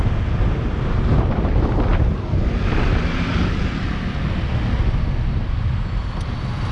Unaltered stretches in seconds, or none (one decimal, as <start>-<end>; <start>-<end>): 0.0-6.7